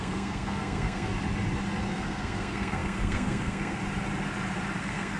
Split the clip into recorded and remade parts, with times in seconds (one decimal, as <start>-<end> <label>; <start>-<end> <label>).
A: 0.0-1.1 remade; 1.1-1.8 recorded; 1.8-3.8 remade; 3.8-4.8 recorded; 4.8-5.2 remade